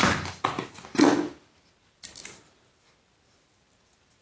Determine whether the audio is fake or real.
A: real